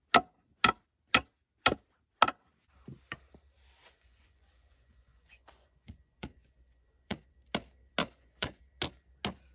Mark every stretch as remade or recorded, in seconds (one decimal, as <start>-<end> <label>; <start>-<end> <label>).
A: 0.0-3.8 recorded; 3.8-7.3 remade; 7.3-8.0 recorded; 8.0-8.6 remade; 8.6-9.5 recorded